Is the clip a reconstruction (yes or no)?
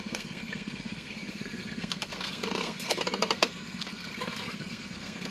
yes